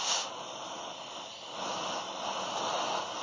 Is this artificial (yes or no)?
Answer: no